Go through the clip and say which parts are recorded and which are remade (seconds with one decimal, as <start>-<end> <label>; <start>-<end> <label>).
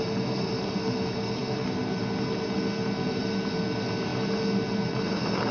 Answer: 0.0-5.5 recorded